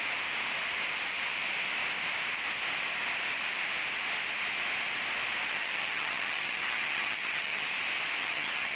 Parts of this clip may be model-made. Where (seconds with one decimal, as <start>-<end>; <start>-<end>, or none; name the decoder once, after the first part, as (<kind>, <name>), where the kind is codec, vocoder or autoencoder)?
5.4-7.7 (vocoder, HiFi-GAN); 8.2-8.8